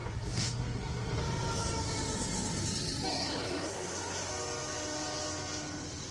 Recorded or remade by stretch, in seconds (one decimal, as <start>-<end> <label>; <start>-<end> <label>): 0.0-1.2 remade; 1.2-3.1 recorded; 3.1-4.3 remade; 4.3-6.1 recorded